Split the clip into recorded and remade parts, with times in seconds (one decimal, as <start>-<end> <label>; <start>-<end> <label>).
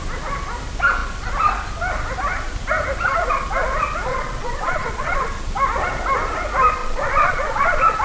0.0-4.1 recorded; 4.1-5.3 remade; 5.3-6.8 recorded; 6.8-8.0 remade